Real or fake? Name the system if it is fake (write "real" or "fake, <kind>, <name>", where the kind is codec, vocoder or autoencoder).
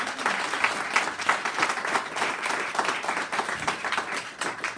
real